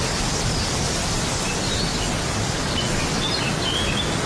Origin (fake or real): real